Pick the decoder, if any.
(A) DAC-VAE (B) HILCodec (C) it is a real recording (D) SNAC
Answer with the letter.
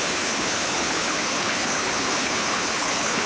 B